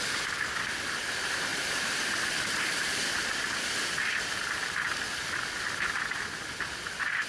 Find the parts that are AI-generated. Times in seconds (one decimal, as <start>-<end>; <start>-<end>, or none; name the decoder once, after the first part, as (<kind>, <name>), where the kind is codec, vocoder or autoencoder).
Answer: 1.5-5.3 (vocoder, BigVGAN v2)